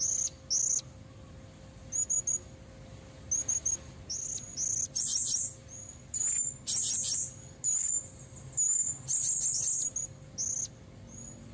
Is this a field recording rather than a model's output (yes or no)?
yes